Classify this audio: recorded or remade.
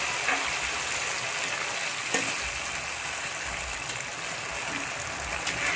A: recorded